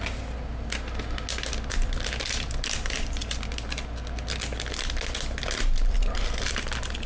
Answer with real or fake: real